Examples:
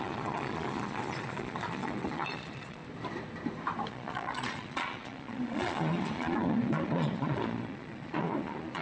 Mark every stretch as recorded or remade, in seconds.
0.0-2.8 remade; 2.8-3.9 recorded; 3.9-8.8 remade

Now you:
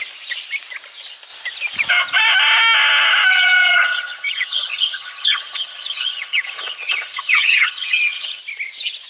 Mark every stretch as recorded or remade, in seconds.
0.0-3.3 recorded; 3.3-8.4 remade; 8.4-9.1 recorded

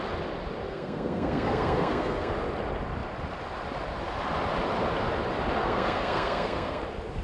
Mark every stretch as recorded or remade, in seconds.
0.0-0.7 recorded; 0.7-2.3 remade; 2.3-5.6 recorded; 5.6-6.8 remade; 6.8-7.2 recorded